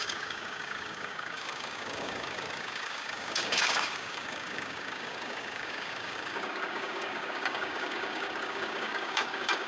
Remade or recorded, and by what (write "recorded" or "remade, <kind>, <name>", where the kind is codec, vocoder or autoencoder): remade, codec, DAC